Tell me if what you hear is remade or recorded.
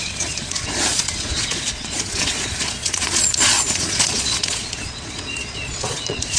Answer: remade